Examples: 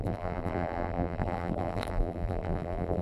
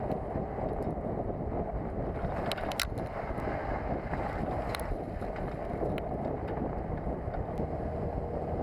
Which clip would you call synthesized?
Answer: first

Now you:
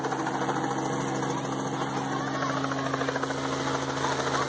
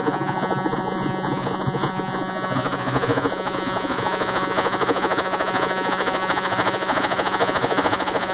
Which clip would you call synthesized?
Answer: second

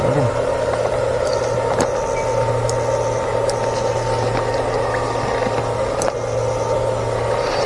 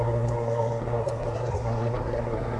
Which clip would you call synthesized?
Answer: second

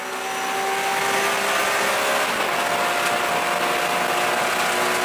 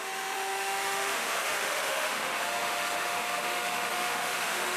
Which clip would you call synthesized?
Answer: second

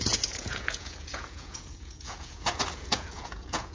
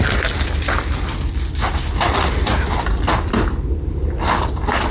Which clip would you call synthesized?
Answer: first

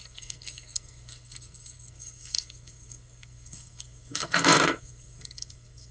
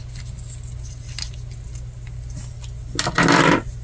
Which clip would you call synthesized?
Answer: first